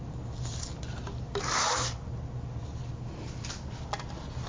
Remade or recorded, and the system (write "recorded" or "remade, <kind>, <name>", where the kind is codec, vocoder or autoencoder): recorded